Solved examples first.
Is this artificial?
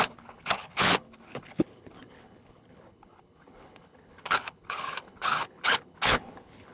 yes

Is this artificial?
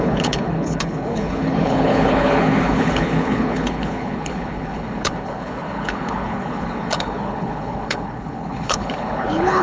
yes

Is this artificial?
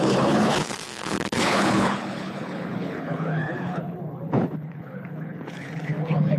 yes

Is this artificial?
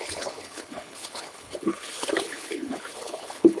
yes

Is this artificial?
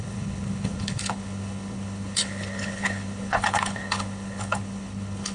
yes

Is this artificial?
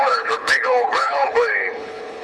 yes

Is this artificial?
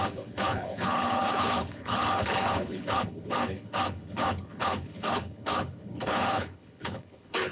yes